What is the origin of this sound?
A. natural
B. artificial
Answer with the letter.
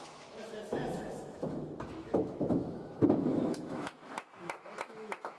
B